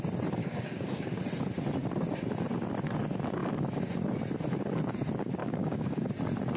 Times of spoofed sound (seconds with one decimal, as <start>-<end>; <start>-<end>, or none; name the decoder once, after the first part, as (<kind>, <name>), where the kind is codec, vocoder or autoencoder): 0.4-1.2 (codec, DAC); 5.4-6.1